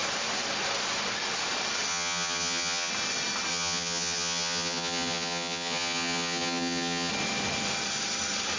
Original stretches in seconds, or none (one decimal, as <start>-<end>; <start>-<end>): 0.0-1.9; 2.9-3.5; 7.1-8.6